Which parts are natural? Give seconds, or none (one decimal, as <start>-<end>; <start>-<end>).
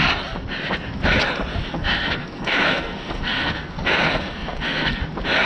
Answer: 0.0-1.7; 5.0-5.5